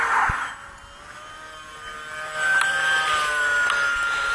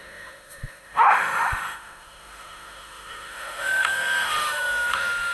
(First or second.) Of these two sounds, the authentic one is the first